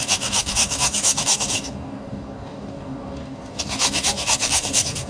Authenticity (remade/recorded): remade